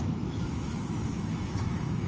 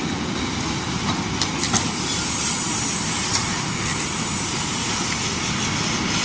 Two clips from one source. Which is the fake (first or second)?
first